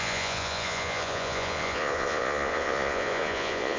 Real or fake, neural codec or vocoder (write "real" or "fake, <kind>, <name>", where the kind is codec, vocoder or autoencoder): fake, vocoder, Vocos